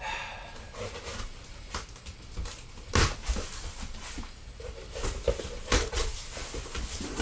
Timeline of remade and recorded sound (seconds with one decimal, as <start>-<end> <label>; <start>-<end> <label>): 0.0-7.2 recorded